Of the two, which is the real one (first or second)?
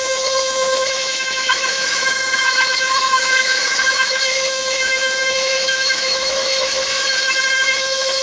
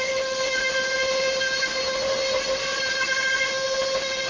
second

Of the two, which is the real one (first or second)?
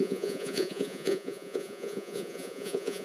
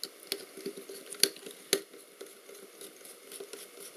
second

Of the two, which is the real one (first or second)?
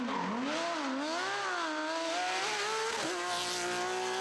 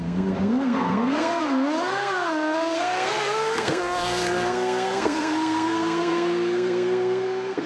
first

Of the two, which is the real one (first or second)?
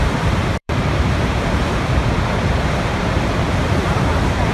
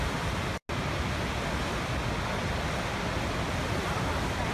second